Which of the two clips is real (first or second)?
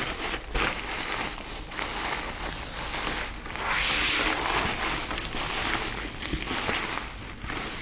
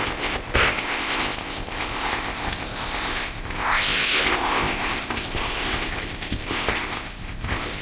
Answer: first